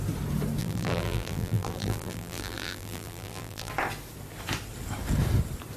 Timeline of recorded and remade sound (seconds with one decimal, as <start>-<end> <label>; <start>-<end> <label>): 0.0-0.6 recorded; 0.6-3.7 remade; 3.7-5.8 recorded